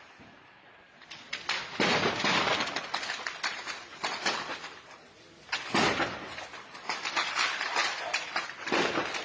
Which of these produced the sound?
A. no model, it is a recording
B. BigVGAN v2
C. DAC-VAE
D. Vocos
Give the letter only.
A